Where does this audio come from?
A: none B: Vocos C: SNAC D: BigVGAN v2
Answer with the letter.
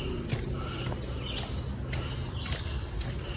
A